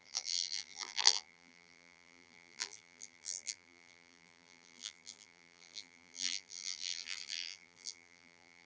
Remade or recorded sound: remade